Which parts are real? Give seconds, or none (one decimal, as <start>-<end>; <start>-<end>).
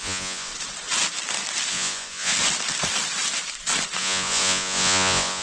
0.5-1.7; 2.3-4.0